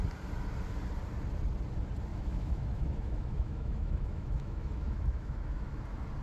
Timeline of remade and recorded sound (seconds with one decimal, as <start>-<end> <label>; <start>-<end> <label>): 0.0-2.1 recorded; 2.1-5.8 remade; 5.8-6.2 recorded